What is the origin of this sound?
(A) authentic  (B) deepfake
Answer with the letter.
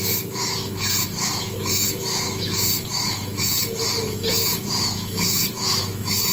B